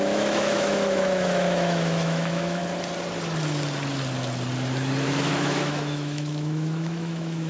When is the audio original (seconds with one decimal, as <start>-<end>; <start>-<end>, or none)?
2.6-5.3